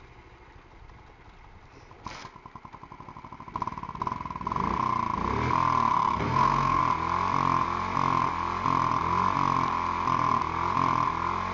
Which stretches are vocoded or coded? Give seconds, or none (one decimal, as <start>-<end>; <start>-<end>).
5.9-6.8